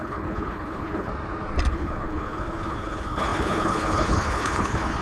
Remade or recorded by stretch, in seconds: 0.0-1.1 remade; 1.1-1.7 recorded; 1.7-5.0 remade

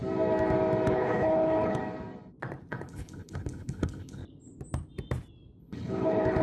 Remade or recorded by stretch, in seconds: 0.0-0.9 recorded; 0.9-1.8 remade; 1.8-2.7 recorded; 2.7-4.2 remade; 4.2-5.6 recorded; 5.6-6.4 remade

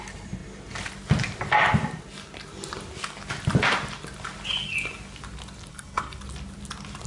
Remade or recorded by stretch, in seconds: 0.0-5.7 recorded; 5.7-6.2 remade; 6.2-7.1 recorded

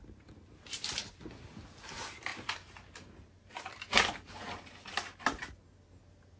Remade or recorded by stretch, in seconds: 0.0-6.4 recorded

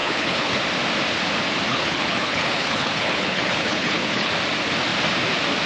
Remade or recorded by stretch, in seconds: 0.0-0.6 remade; 0.6-1.7 recorded; 1.7-4.3 remade; 4.3-5.7 recorded

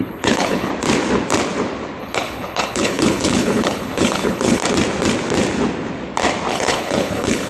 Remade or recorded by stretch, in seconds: 0.0-0.7 remade; 0.7-2.0 recorded; 2.0-4.6 remade; 4.6-6.5 recorded; 6.5-7.5 remade